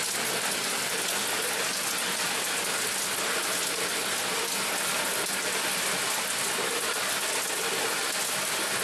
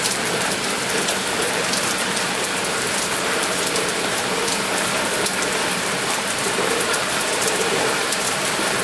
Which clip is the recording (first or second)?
first